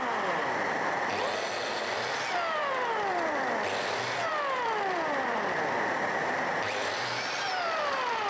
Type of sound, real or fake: fake